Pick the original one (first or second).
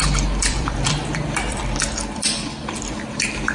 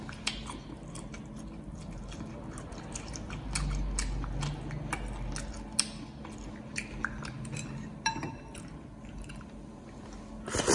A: second